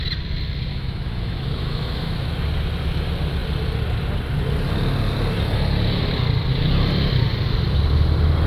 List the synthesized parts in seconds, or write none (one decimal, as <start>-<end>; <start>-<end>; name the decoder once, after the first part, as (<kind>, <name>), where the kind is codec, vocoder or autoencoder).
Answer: 0.7-2.3 (autoencoder, DAC-VAE)